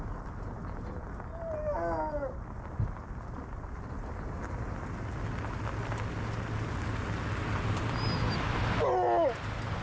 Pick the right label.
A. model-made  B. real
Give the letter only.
B